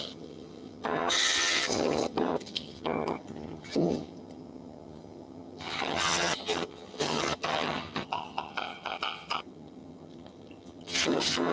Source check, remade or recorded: remade